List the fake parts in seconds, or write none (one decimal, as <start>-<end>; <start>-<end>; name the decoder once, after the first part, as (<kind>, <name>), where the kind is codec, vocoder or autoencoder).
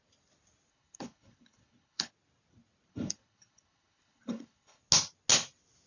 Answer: 0.7-2.1 (codec, HILCodec); 2.9-4.8